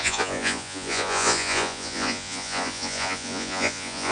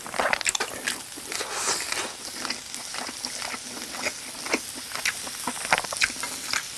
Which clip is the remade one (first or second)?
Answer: first